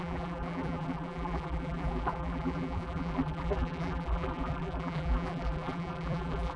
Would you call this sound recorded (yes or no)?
no